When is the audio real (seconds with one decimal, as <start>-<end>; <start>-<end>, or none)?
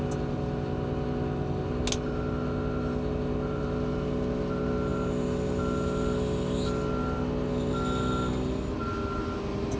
0.0-9.8